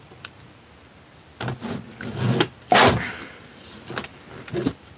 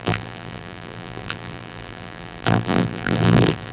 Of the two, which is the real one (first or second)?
first